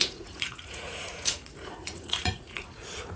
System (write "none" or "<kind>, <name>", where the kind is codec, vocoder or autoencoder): vocoder, Vocos